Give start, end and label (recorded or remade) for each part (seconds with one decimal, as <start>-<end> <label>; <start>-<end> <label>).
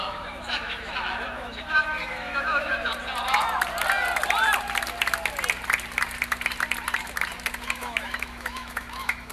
0.0-2.9 remade; 2.9-7.6 recorded; 7.6-9.3 remade